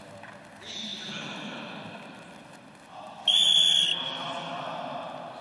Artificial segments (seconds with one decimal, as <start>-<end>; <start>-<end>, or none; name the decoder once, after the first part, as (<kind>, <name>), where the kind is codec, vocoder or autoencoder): none